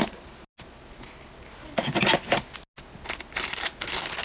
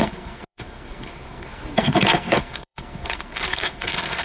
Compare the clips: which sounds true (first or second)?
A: first